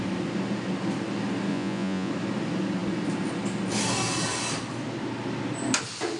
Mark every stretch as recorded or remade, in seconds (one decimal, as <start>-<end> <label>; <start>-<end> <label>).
0.0-1.5 recorded; 1.5-2.1 remade; 2.1-6.2 recorded